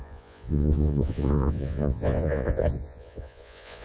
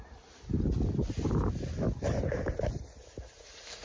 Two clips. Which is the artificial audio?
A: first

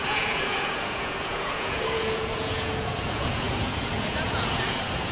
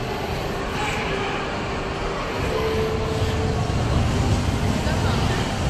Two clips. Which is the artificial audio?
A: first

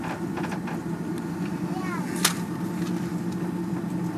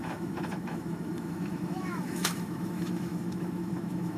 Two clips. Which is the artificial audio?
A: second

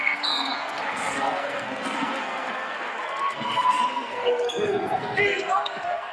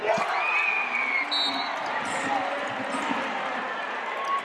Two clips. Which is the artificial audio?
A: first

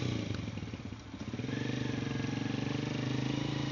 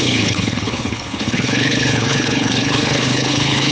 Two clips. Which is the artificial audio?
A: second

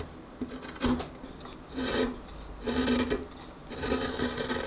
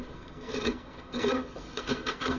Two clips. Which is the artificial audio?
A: second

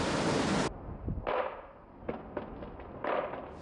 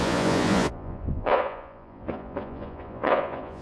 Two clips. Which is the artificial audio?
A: second